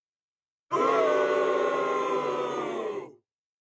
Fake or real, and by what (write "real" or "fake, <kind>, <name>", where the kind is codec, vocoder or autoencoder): real